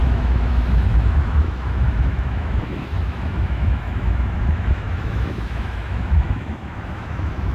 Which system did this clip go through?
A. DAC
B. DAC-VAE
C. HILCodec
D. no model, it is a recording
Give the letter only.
B